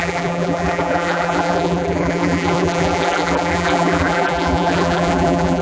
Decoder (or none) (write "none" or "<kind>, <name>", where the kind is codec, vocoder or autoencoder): vocoder, BigVGAN v2